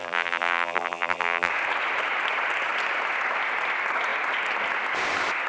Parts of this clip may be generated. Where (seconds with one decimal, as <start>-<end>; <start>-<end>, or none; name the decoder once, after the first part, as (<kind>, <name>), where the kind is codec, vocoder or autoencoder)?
0.0-1.5 (vocoder, BigVGAN v2)